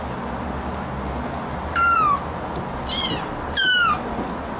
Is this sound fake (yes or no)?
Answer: no